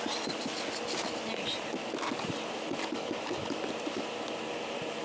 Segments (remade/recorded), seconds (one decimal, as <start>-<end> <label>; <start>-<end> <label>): 0.0-1.8 recorded; 1.8-2.3 remade; 2.3-2.8 recorded; 2.8-3.7 remade; 3.7-5.0 recorded